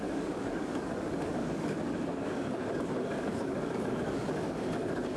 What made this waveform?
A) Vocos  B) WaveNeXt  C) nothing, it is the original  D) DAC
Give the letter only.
D